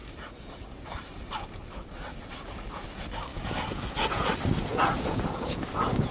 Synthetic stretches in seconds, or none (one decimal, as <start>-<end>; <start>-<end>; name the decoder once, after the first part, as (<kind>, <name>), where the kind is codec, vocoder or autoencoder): 3.3-4.3 (vocoder, Vocos); 4.7-6.1

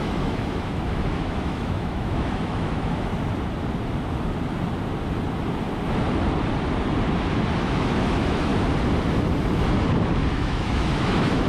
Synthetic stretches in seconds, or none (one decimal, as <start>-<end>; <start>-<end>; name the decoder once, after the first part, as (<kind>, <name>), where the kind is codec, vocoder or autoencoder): 0.0-3.1 (autoencoder, DAC-VAE); 7.6-8.5; 10.3-11.5

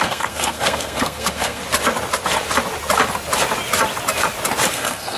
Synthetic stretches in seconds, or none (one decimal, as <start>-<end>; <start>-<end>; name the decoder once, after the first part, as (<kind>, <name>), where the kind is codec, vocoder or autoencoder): 0.0-1.6 (codec, SNAC); 4.7-5.2